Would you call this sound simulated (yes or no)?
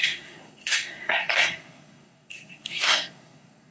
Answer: yes